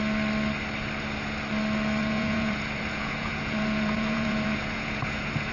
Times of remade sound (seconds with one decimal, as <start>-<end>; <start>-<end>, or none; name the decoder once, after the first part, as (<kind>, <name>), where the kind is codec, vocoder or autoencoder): 2.0-5.5 (vocoder, Vocos)

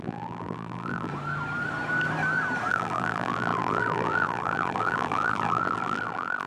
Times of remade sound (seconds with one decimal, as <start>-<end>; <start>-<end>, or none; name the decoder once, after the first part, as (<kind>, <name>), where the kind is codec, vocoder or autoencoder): 0.0-1.1 (vocoder, BigVGAN v2); 2.7-6.5

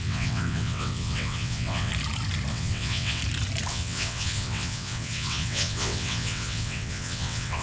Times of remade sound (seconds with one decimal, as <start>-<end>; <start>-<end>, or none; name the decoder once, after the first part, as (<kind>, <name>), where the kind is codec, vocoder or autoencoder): 0.0-1.9 (vocoder, WaveNeXt); 2.5-3.2; 3.7-7.6

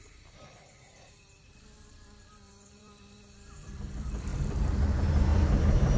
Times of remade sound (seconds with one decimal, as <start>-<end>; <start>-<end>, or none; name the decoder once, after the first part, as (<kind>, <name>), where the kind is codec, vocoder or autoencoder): 0.0-6.0 (vocoder, BigVGAN v2)

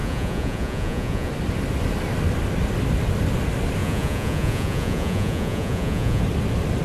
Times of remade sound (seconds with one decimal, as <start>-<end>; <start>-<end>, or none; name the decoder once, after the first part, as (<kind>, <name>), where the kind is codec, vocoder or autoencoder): 0.0-1.3 (vocoder, Vocos); 3.8-6.2